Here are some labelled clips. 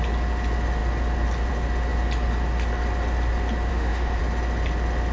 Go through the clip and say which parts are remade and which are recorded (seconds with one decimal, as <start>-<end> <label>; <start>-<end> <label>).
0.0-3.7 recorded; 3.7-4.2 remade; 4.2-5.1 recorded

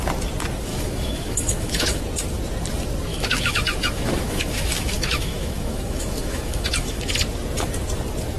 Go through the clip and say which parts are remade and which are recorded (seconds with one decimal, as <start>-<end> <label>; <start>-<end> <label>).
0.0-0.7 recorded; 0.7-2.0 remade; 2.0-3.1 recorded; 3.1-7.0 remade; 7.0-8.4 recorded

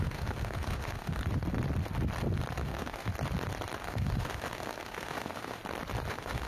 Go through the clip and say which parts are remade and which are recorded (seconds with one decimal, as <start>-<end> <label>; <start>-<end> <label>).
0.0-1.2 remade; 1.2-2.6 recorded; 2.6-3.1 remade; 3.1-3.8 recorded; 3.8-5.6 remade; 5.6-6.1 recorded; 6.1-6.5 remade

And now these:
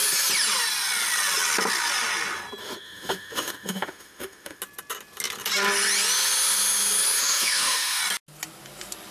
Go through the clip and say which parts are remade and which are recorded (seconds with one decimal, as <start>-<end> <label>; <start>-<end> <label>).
0.0-2.6 recorded; 2.6-4.6 remade; 4.6-7.2 recorded; 7.2-8.0 remade; 8.0-9.1 recorded

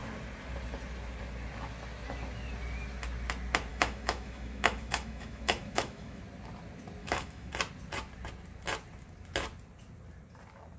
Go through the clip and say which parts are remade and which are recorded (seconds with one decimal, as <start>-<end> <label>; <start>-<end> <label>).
0.0-3.7 recorded; 3.7-6.2 remade; 6.2-7.0 recorded; 7.0-7.5 remade; 7.5-10.8 recorded